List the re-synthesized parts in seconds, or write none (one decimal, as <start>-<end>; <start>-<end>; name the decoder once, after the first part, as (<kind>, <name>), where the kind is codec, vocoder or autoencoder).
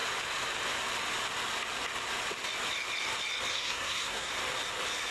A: 3.5-4.3 (codec, SNAC)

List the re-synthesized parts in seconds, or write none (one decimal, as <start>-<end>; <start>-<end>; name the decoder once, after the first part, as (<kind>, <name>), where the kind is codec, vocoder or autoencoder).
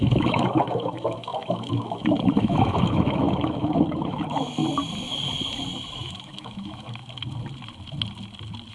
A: 0.0-4.6 (autoencoder, DAC-VAE); 5.9-7.0